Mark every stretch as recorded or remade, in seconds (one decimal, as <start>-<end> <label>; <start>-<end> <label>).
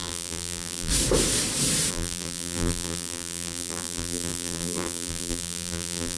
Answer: 0.0-0.9 remade; 0.9-1.9 recorded; 1.9-6.2 remade